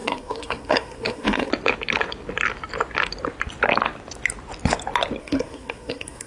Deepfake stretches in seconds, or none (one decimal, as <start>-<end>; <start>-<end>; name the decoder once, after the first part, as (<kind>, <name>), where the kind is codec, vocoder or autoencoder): 0.0-1.5 (codec, SNAC); 5.2-6.3